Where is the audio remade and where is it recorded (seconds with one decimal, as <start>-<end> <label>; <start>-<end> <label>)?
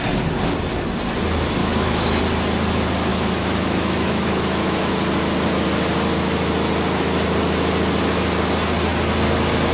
0.0-1.6 recorded; 1.6-2.2 remade; 2.2-3.1 recorded; 3.1-4.9 remade; 4.9-9.7 recorded